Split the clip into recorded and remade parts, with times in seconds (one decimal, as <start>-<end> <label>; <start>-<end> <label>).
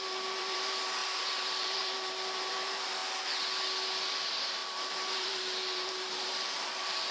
0.0-3.0 remade; 3.0-4.1 recorded; 4.1-7.1 remade